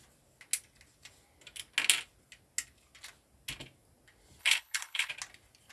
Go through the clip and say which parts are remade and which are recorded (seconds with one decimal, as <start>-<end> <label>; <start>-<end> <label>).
0.0-4.4 recorded; 4.4-5.1 remade; 5.1-5.7 recorded